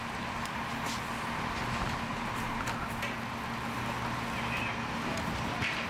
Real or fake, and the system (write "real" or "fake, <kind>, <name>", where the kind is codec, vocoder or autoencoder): real